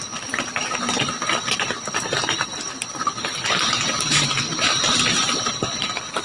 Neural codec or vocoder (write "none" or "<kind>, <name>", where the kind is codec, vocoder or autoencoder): none